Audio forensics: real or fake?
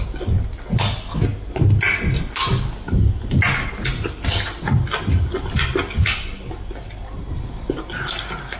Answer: real